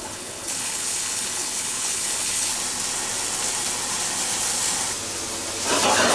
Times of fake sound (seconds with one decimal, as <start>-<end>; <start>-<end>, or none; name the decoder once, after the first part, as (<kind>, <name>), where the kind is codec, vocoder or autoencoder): 0.0-2.5 (codec, HILCodec)